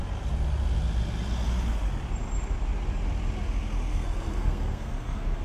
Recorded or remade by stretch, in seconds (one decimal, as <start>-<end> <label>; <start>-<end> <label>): 0.0-3.9 recorded; 3.9-5.4 remade